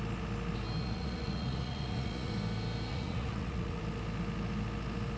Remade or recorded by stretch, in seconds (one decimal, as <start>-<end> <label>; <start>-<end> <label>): 0.0-0.8 recorded; 0.8-2.3 remade; 2.3-2.9 recorded; 2.9-3.8 remade; 3.8-5.2 recorded